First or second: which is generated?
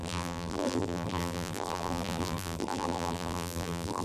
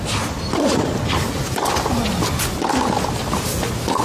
first